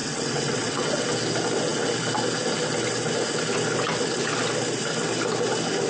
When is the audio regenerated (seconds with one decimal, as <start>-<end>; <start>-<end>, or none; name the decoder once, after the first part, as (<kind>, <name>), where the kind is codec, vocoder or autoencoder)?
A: 0.0-1.0 (vocoder, WaveNeXt)